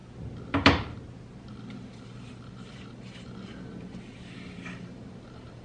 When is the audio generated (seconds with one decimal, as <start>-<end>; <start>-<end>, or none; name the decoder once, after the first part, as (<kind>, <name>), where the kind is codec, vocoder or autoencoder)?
1.5-5.6 (vocoder, BigVGAN v2)